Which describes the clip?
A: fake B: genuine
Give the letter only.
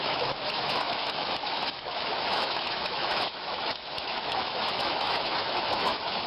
A